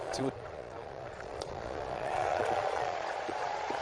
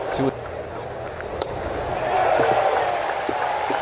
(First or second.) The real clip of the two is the second